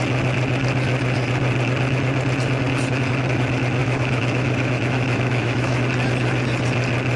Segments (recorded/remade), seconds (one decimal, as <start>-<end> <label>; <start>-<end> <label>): 0.0-3.8 recorded; 3.8-5.8 remade; 5.8-7.2 recorded